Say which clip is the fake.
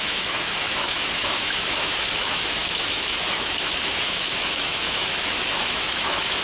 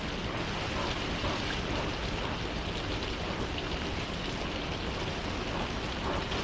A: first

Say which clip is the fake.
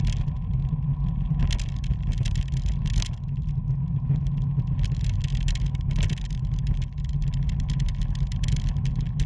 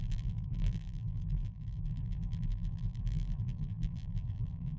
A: second